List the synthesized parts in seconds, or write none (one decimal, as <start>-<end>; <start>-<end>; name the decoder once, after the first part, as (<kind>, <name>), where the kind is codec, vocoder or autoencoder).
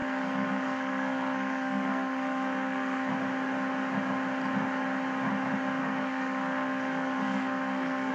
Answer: 0.0-3.1 (codec, SNAC); 5.8-8.1